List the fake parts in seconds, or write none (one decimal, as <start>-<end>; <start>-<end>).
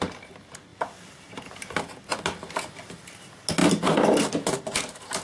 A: none